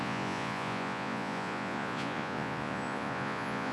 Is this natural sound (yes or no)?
no